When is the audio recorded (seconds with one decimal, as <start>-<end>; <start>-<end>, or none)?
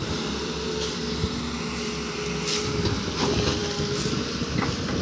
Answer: 0.0-5.0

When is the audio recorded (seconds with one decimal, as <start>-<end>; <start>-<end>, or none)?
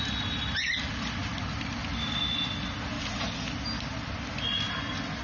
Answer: 0.0-5.2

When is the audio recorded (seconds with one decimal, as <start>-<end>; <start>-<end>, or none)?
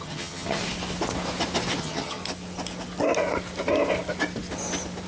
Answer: 0.6-1.8; 2.2-5.1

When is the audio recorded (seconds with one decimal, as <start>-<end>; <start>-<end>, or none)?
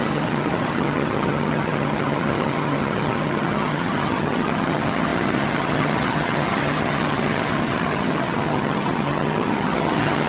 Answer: none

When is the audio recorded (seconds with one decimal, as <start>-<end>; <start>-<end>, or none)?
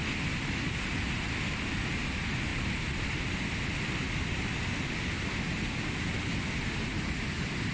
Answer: 0.0-7.7